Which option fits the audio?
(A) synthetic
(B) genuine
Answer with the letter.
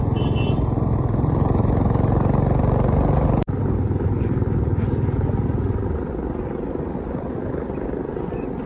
B